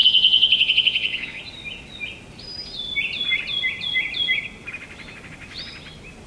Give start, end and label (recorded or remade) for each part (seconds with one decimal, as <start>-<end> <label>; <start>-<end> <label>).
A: 0.0-1.4 remade; 1.4-6.3 recorded